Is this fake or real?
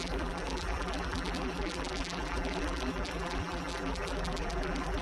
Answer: fake